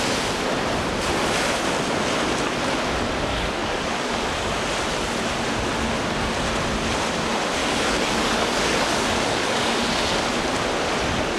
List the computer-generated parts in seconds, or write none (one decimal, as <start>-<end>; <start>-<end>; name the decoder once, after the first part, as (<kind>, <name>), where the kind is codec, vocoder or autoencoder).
3.3-4.7 (codec, DAC); 7.6-9.8